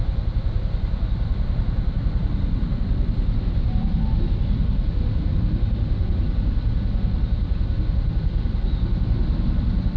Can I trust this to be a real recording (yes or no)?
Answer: yes